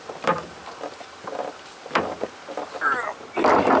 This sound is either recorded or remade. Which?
recorded